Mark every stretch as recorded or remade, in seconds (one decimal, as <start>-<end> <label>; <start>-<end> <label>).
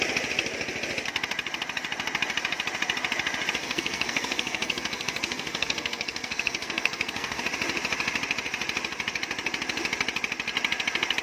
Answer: 0.0-3.6 recorded; 3.6-7.4 remade; 7.4-11.2 recorded